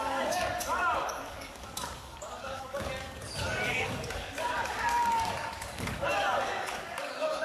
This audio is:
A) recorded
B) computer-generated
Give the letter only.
B